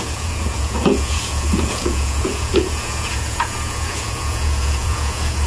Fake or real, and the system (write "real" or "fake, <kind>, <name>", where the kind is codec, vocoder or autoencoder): fake, vocoder, Vocos